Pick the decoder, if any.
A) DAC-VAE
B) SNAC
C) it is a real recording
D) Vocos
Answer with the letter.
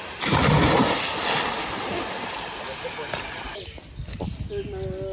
C